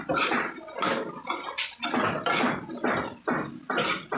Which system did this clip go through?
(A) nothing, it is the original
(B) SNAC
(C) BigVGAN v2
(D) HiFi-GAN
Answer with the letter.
A